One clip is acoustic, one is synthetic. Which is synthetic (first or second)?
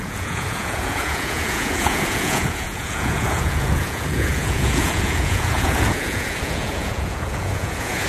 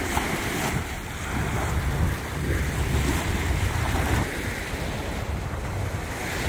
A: first